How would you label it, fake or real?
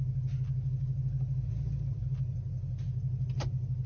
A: real